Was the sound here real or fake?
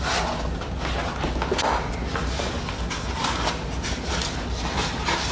real